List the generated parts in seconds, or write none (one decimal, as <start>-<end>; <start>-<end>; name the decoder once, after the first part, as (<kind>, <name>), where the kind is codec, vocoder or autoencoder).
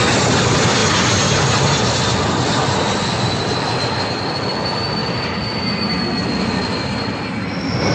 none